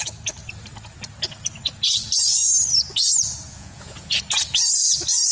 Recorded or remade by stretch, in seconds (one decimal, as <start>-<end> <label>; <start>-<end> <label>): 0.0-3.5 recorded; 3.5-4.2 remade; 4.2-5.3 recorded